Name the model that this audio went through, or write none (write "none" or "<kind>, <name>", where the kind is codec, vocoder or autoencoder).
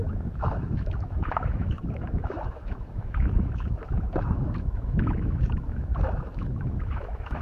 autoencoder, DAC-VAE